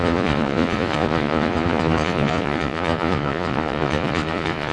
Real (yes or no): no